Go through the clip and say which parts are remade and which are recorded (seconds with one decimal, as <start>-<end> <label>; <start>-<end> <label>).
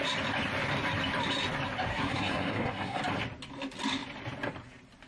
0.0-1.9 recorded; 1.9-3.0 remade; 3.0-5.1 recorded